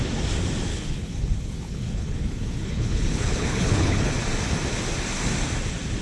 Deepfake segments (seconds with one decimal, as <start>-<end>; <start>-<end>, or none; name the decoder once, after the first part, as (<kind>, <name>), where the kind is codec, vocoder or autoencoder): 0.7-4.1 (codec, HILCodec)